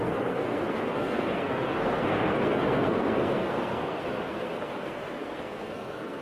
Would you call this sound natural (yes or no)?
no